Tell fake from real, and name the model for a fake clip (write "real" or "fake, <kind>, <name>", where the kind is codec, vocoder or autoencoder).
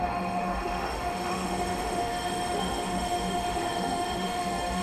fake, autoencoder, DAC-VAE